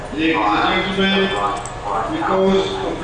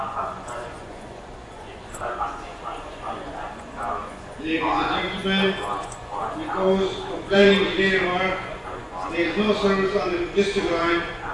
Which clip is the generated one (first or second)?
second